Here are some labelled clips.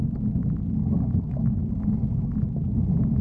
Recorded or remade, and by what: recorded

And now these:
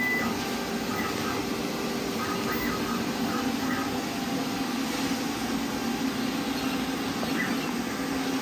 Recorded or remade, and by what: recorded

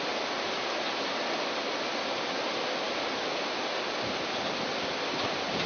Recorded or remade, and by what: recorded